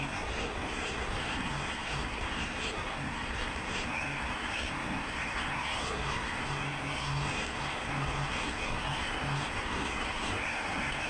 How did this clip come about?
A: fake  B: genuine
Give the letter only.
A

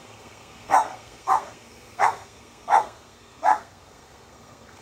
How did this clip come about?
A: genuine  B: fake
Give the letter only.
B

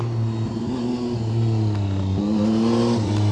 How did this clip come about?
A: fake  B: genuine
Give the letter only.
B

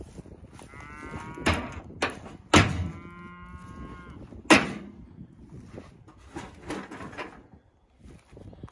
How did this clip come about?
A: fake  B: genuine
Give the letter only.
B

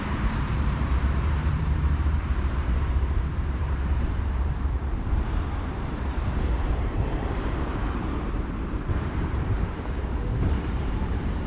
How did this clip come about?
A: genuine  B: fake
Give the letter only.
B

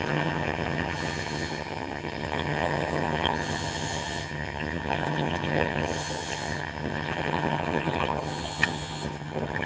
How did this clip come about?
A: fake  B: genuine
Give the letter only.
A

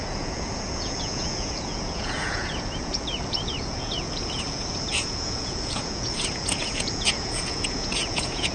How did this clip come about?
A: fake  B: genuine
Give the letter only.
A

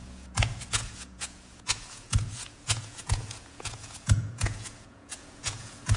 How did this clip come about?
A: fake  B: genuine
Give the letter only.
A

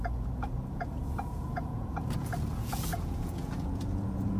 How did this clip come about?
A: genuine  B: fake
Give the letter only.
B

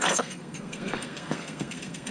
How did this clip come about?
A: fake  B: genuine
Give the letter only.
A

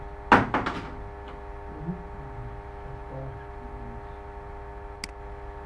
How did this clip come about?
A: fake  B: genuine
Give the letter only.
B